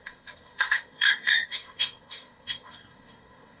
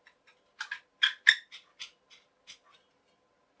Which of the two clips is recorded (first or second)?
second